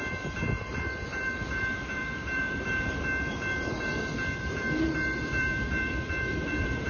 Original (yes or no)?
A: no